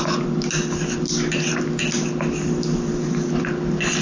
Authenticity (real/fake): real